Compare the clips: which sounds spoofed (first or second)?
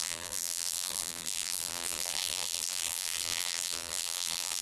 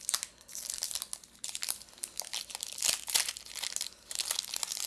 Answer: first